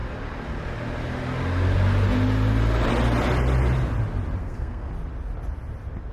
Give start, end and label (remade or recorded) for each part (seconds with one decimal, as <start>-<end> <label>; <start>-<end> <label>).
0.0-4.4 recorded; 4.4-4.9 remade; 4.9-6.1 recorded